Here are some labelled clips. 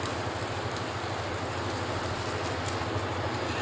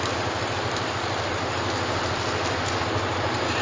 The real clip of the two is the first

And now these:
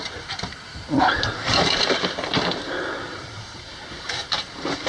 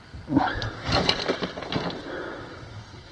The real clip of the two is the second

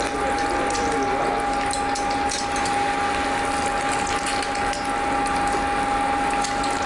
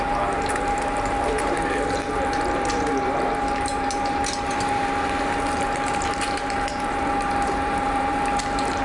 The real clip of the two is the first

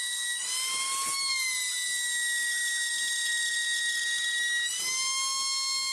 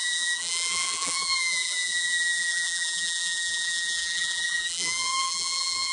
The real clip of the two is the first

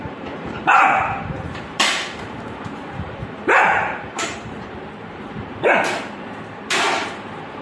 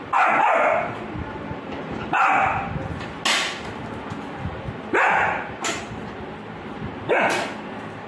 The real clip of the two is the second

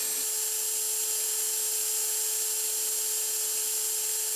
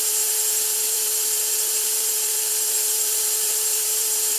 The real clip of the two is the first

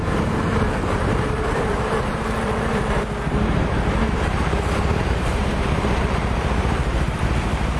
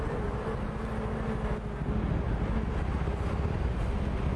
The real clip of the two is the second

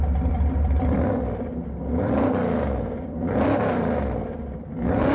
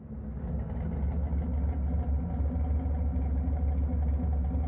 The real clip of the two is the second